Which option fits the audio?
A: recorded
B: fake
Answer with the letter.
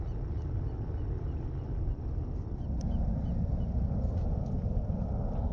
A